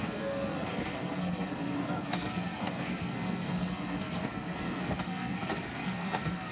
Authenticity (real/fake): fake